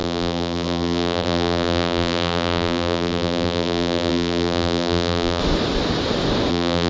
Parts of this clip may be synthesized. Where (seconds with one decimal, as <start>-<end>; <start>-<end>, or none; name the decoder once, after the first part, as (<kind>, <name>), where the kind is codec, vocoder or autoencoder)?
0.0-5.4 (vocoder, BigVGAN v2); 6.5-6.9